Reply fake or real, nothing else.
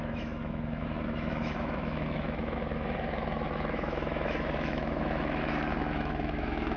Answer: fake